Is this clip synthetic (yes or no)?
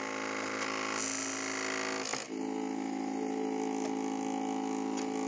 no